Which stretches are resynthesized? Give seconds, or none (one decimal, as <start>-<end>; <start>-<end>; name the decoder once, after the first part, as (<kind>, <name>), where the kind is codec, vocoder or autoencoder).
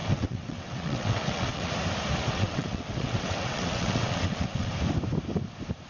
0.0-1.7 (vocoder, WaveNeXt); 2.3-4.7